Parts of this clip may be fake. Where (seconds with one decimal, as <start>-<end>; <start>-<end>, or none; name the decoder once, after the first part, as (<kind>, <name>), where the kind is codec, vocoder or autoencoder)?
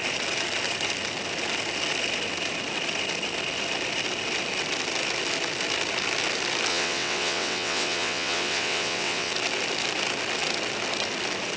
6.7-9.3 (vocoder, WaveNeXt)